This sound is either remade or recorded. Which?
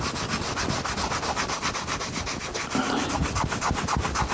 recorded